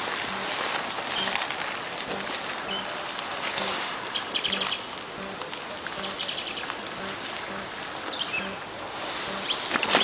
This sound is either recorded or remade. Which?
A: recorded